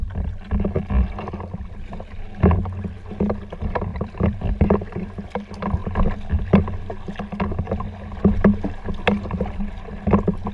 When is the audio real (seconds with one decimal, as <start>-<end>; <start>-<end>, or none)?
0.7-3.9; 4.5-10.5